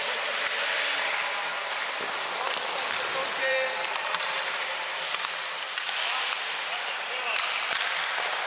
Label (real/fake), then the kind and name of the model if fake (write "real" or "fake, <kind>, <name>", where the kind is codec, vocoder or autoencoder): fake, vocoder, BigVGAN v2